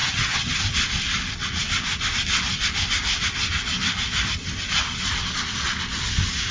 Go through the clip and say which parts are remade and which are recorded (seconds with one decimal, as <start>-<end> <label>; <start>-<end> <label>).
0.0-0.6 remade; 0.6-6.5 recorded